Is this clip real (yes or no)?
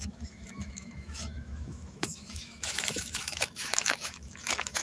no